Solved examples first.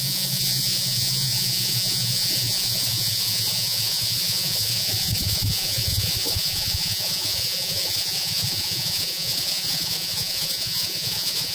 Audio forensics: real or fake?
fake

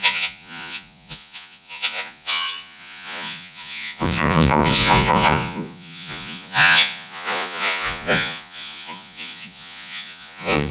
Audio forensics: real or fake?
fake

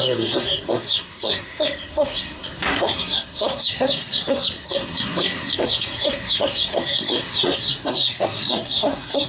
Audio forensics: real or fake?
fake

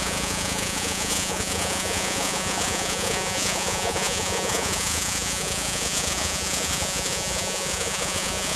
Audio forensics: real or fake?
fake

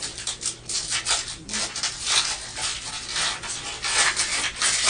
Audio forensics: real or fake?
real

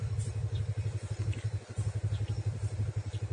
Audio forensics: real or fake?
real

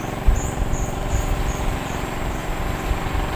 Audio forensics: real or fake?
fake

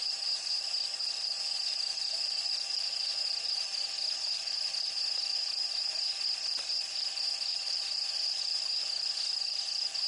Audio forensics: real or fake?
real